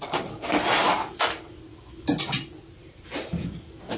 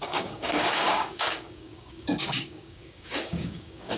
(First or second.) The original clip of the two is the first